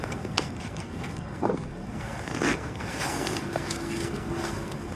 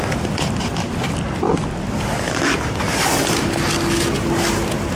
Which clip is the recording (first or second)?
second